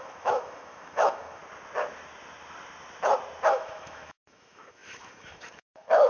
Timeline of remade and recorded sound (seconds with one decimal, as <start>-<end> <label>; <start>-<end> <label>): 0.0-1.4 remade; 1.4-3.5 recorded; 3.5-6.1 remade